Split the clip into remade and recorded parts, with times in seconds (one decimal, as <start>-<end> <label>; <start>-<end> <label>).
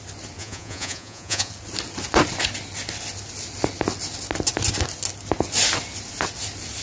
0.0-0.4 recorded; 0.4-1.5 remade; 1.5-6.8 recorded